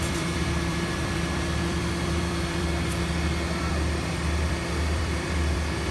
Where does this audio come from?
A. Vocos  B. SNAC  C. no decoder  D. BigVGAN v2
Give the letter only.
D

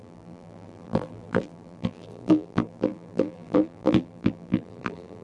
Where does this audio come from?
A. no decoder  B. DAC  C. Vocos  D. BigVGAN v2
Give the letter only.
D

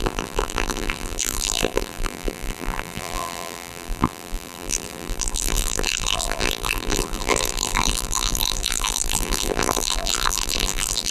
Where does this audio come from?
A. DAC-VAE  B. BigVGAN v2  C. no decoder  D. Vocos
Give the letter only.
B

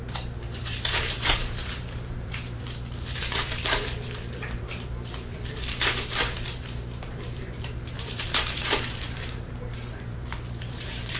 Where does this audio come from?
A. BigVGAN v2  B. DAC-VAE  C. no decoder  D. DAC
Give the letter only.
A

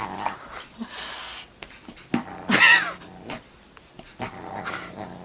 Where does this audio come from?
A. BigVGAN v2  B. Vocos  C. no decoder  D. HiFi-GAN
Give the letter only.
C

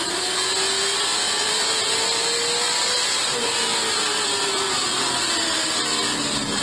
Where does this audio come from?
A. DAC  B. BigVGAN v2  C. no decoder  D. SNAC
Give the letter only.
C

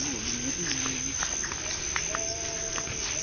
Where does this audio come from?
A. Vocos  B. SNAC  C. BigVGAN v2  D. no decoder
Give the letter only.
D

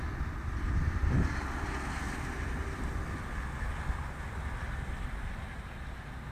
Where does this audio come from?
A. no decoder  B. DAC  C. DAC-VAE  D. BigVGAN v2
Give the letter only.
A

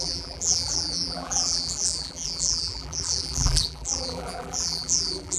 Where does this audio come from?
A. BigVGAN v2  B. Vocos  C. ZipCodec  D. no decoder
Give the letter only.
A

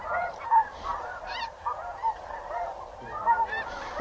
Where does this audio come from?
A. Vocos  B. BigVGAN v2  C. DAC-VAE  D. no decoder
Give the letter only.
B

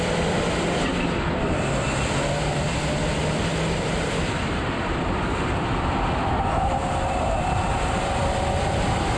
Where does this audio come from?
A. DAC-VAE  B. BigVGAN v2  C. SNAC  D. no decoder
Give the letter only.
B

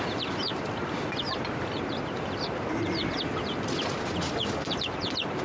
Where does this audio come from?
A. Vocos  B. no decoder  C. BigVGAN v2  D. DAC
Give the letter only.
C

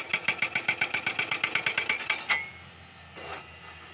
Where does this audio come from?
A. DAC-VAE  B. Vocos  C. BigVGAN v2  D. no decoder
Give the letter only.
D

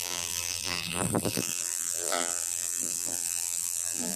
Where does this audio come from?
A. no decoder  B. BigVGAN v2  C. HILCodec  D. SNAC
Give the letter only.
B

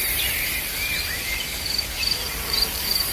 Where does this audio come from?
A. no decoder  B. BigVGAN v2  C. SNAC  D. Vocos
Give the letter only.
B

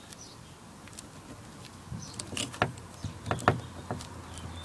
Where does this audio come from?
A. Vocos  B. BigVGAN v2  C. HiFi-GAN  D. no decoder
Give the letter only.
D